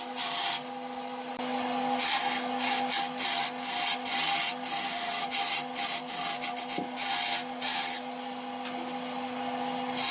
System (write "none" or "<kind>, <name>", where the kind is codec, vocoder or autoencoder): none